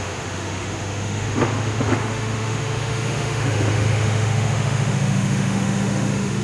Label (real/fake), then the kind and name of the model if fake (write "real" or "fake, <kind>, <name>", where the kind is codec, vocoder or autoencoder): fake, autoencoder, DAC-VAE